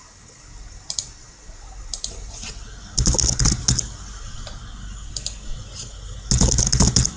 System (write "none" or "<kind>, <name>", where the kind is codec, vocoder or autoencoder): none